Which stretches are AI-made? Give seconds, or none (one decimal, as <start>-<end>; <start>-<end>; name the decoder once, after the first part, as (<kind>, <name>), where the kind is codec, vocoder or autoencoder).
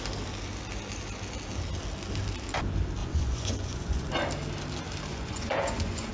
3.0-4.1 (vocoder, Vocos); 5.1-6.1